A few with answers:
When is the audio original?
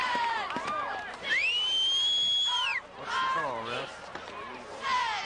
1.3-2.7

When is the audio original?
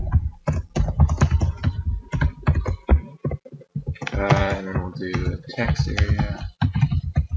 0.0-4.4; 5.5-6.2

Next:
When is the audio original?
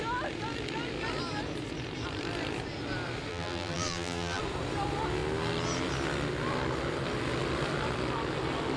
0.0-3.3; 4.4-8.8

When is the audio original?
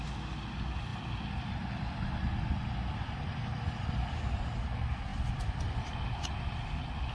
0.0-0.9; 3.7-5.1; 6.4-7.1